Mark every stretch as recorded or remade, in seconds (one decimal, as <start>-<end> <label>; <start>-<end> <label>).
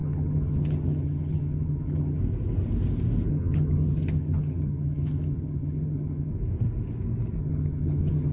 0.0-2.2 remade; 2.2-3.3 recorded; 3.3-6.3 remade; 6.3-7.4 recorded; 7.4-8.3 remade